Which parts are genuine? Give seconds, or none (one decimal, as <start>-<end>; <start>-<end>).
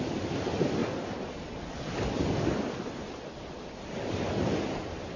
0.0-5.2